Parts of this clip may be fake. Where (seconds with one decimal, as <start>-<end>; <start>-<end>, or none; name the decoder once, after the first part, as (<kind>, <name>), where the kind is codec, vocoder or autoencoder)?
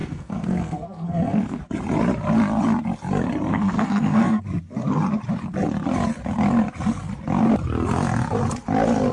0.0-1.6 (codec, SNAC); 3.5-4.4